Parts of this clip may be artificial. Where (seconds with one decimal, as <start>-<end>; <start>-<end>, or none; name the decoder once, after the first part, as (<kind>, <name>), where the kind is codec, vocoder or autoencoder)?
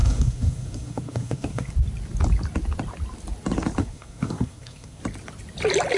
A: 0.0-1.7 (codec, SNAC); 3.8-5.0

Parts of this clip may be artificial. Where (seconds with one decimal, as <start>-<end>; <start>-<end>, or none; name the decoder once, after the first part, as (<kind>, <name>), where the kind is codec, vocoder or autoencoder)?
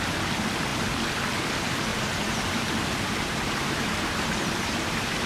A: 1.9-5.3 (vocoder, BigVGAN v2)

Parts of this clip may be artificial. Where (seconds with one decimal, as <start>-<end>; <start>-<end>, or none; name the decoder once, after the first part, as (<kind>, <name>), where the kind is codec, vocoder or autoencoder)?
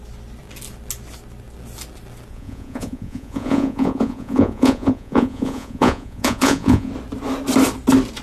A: 2.3-6.9 (vocoder, Vocos)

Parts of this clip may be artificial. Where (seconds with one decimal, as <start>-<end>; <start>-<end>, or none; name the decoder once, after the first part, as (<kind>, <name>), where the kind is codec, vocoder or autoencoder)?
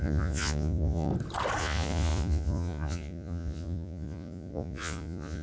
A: 0.0-1.1 (vocoder, Vocos); 1.6-5.4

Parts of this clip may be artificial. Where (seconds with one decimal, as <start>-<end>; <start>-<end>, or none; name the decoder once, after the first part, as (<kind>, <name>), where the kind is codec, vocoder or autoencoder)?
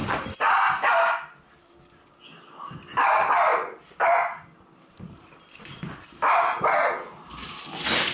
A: none